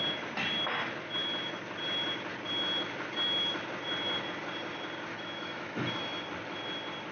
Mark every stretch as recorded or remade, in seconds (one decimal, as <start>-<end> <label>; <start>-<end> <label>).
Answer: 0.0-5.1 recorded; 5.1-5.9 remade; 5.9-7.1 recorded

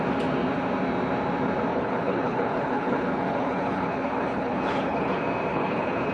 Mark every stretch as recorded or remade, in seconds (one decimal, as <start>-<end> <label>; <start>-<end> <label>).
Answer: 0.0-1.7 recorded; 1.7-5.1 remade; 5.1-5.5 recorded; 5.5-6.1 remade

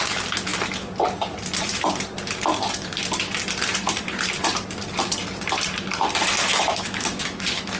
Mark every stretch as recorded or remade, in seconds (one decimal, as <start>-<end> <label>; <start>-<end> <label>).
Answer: 0.0-6.5 recorded; 6.5-7.8 remade